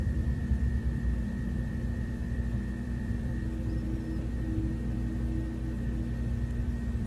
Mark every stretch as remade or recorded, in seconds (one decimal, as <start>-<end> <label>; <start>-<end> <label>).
0.0-3.3 remade; 3.3-6.6 recorded; 6.6-7.1 remade